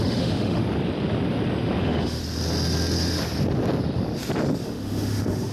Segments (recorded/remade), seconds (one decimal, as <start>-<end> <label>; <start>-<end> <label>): 0.0-0.6 remade; 0.6-1.8 recorded; 1.8-2.2 remade; 2.2-4.6 recorded; 4.6-5.5 remade